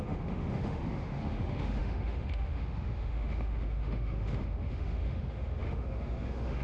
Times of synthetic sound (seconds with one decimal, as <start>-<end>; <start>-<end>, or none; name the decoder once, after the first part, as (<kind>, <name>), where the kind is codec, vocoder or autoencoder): 0.0-6.6 (autoencoder, DAC-VAE)